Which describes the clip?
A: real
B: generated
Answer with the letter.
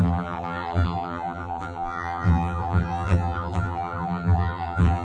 B